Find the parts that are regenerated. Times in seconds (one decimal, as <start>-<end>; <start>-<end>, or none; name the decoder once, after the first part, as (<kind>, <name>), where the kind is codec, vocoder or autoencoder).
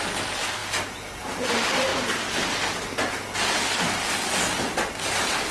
none